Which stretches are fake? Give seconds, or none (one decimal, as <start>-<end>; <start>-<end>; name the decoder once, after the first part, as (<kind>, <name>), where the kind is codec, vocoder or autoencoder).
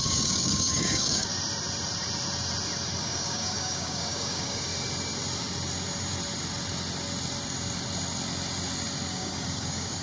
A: 0.0-1.3 (codec, DAC); 3.0-4.7; 9.1-10.0